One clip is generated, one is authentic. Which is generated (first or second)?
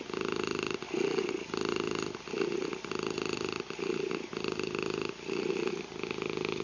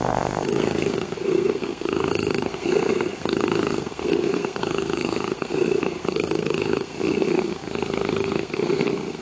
second